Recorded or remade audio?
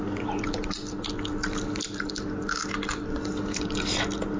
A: recorded